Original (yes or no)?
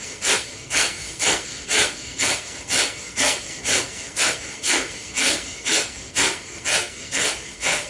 no